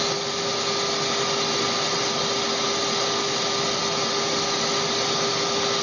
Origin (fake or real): real